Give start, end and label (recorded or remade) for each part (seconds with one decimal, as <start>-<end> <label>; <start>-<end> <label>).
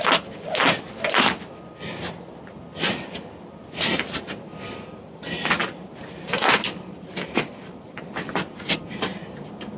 0.0-5.6 recorded; 5.6-8.3 remade; 8.3-9.8 recorded